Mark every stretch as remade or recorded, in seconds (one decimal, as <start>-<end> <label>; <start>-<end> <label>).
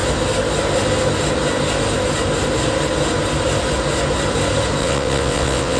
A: 0.0-4.8 recorded; 4.8-5.8 remade